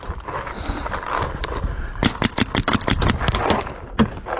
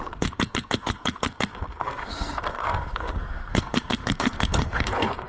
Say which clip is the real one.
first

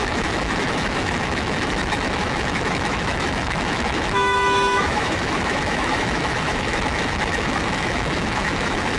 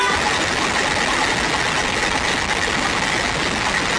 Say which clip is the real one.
second